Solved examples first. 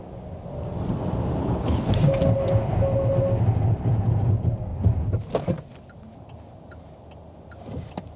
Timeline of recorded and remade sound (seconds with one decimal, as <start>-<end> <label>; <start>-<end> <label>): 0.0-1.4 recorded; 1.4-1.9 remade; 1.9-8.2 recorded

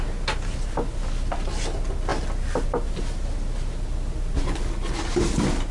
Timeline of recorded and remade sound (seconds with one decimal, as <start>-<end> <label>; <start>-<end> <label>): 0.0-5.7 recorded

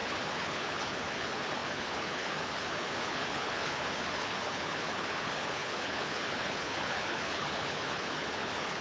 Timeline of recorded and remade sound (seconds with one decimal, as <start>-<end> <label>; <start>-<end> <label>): 0.0-8.8 remade